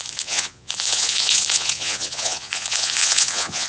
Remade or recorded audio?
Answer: remade